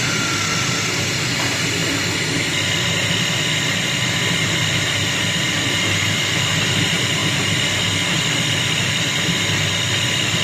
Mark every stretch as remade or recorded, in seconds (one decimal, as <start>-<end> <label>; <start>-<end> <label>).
0.0-10.4 recorded